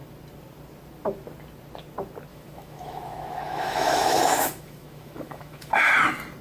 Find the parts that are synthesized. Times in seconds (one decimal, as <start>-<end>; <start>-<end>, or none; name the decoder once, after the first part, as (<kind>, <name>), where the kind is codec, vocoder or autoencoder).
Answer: 2.3-5.9 (autoencoder, DAC-VAE)